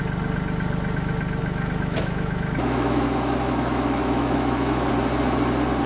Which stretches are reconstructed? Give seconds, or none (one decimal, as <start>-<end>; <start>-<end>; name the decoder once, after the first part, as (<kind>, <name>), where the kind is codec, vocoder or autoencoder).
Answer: 1.4-4.9 (autoencoder, DAC-VAE)

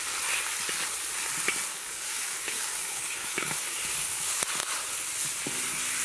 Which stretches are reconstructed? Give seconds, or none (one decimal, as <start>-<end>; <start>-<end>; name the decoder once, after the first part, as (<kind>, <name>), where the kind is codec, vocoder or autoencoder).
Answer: 1.7-4.4 (codec, DAC)

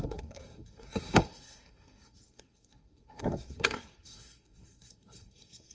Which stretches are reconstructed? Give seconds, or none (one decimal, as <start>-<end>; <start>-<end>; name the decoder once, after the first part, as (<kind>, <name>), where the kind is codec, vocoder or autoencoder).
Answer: 0.0-5.7 (codec, SNAC)

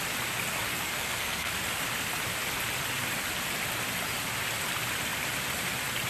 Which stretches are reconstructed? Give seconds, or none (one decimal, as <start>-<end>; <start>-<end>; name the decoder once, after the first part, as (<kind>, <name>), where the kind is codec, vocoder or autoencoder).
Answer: 0.7-1.5 (codec, SNAC)